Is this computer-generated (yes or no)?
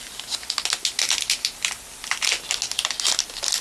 no